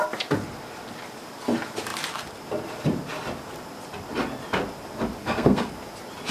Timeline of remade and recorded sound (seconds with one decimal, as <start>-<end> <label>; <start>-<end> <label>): 0.0-5.2 recorded; 5.2-5.7 remade; 5.7-6.3 recorded